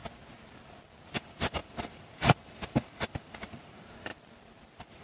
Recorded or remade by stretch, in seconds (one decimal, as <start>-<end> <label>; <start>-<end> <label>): 0.0-1.2 recorded; 1.2-4.1 remade; 4.1-5.0 recorded